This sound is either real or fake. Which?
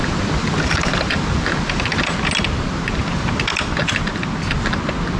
real